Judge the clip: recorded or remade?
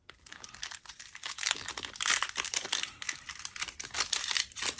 recorded